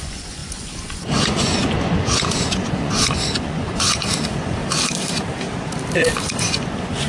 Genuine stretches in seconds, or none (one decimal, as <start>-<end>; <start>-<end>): 4.6-6.4